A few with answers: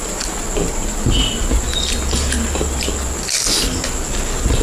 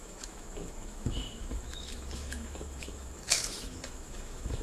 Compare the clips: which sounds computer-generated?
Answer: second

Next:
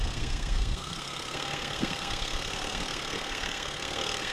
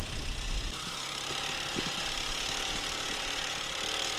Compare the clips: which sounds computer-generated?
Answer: first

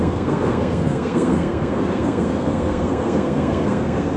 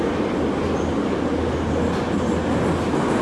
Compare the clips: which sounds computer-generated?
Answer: first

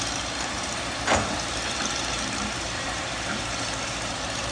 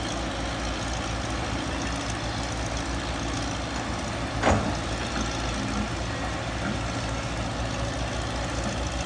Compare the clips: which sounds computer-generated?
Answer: first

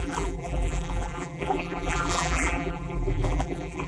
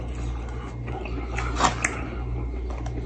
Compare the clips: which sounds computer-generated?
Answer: first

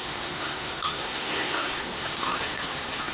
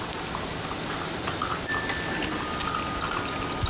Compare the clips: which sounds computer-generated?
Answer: first